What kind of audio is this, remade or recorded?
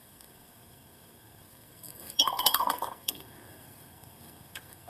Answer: remade